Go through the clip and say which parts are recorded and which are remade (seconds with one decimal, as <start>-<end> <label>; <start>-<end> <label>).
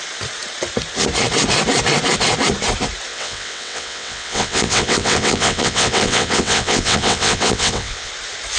0.0-3.1 recorded; 3.1-8.1 remade; 8.1-8.6 recorded